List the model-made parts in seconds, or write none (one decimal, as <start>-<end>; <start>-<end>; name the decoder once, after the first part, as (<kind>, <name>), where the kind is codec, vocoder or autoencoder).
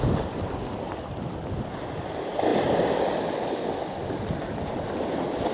none